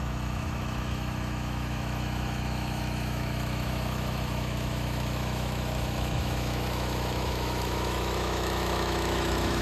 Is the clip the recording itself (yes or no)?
no